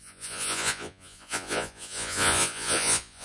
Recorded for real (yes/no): no